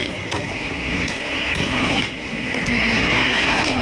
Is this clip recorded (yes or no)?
no